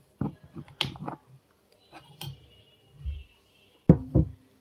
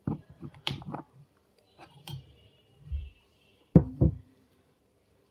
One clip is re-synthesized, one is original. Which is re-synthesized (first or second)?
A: second